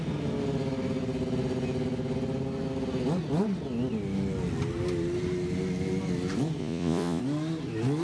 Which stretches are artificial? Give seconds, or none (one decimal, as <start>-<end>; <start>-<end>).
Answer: 6.6-7.2